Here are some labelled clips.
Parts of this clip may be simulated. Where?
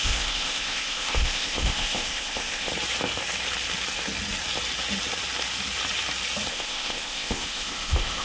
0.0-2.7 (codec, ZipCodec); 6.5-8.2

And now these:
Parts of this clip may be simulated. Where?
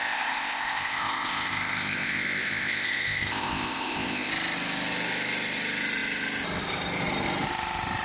0.0-4.3 (codec, ZipCodec)